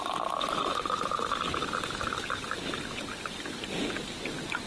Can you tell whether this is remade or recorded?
recorded